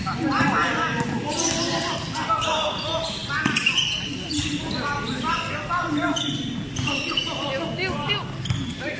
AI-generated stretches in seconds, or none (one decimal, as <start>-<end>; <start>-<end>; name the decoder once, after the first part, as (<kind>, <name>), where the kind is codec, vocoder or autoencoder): none